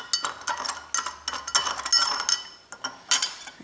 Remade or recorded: recorded